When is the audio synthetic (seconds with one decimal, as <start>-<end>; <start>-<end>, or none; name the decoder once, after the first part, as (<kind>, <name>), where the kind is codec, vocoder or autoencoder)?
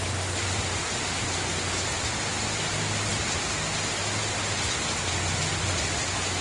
none